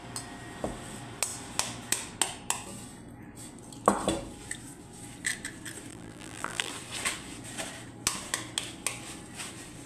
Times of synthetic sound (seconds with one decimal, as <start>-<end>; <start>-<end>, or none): 5.9-6.7